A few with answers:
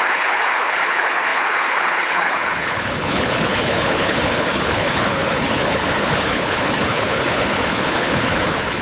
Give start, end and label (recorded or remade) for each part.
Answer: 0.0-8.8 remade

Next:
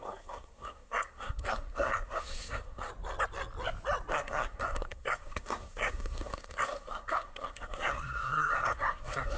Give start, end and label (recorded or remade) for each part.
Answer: 0.0-2.9 remade; 2.9-4.1 recorded; 4.1-9.4 remade

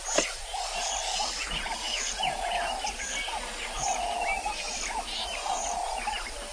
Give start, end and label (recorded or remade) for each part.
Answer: 0.0-6.5 remade

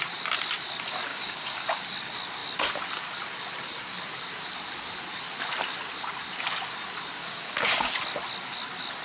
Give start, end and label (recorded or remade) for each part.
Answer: 0.0-1.1 recorded; 1.1-1.8 remade; 1.8-7.2 recorded; 7.2-7.9 remade; 7.9-9.0 recorded

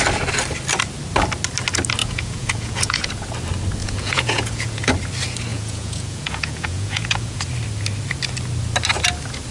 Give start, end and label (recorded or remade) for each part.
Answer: 0.0-2.0 recorded; 2.0-3.1 remade; 3.1-3.8 recorded; 3.8-4.9 remade; 4.9-5.5 recorded; 5.5-7.4 remade; 7.4-9.5 recorded

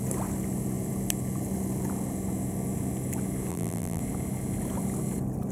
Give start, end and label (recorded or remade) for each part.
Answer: 0.0-3.5 recorded; 3.5-4.0 remade; 4.0-5.5 recorded

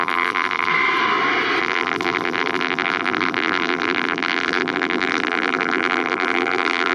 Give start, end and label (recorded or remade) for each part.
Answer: 0.0-0.7 remade; 0.7-1.6 recorded; 1.6-6.9 remade